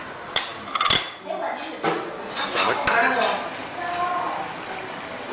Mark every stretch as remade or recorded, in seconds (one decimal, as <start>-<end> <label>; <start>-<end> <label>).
0.0-5.3 recorded